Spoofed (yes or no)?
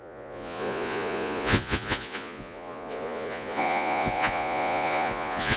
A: yes